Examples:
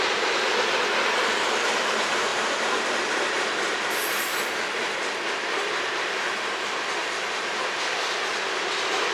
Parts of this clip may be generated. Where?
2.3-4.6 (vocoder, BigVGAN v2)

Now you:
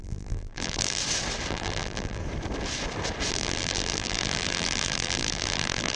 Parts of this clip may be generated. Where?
0.0-1.0 (vocoder, BigVGAN v2); 1.5-2.2; 3.3-6.0

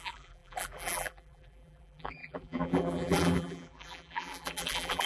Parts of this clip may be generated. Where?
0.0-5.1 (vocoder, BigVGAN v2)

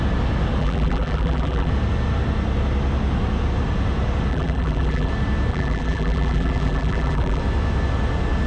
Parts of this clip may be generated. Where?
0.6-1.7 (vocoder, BigVGAN v2); 4.3-5.1; 5.5-7.4

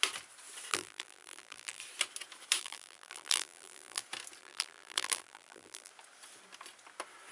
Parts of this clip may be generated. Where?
0.7-1.8 (vocoder, BigVGAN v2); 2.6-4.0; 4.4-5.9

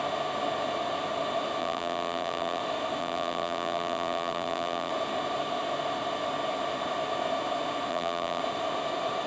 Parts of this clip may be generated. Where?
1.6-2.6 (vocoder, BigVGAN v2); 3.0-4.9; 7.9-8.4